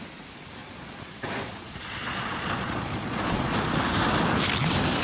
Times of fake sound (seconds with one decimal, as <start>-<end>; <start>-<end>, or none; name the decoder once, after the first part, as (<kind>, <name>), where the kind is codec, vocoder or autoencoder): 0.6-3.6 (vocoder, Vocos)